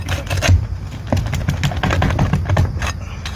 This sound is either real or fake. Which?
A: real